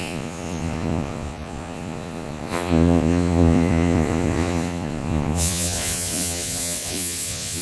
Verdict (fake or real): fake